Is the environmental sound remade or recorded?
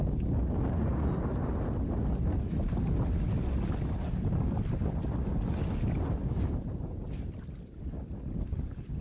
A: recorded